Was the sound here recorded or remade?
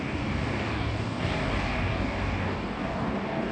remade